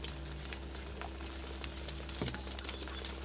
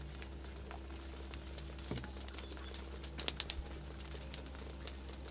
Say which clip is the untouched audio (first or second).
second